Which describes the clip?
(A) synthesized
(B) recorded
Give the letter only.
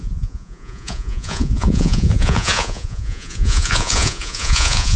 A